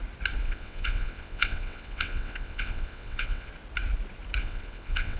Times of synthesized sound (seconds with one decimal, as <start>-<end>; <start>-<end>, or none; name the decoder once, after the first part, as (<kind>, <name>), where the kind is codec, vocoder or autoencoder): 0.4-3.5 (vocoder, WaveNeXt); 4.4-5.2